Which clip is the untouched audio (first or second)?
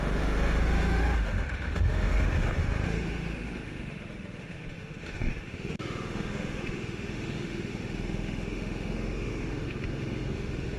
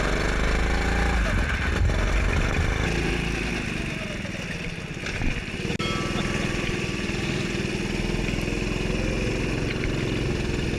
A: second